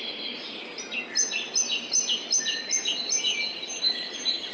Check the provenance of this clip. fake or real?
real